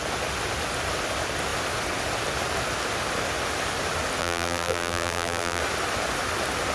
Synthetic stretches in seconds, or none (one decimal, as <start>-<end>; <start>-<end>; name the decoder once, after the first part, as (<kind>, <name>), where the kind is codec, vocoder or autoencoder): 4.2-5.6 (vocoder, BigVGAN v2)